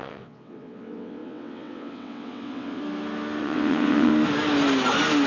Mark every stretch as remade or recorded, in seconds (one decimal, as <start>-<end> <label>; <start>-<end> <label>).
0.0-2.8 remade; 2.8-3.4 recorded; 3.4-4.1 remade; 4.1-5.3 recorded